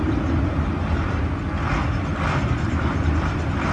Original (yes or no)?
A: yes